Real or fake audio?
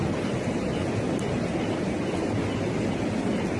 real